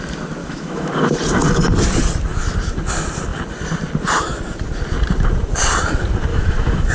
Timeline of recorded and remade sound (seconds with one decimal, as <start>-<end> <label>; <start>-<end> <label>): 0.0-0.4 recorded; 0.4-0.9 remade; 0.9-6.3 recorded; 6.3-6.9 remade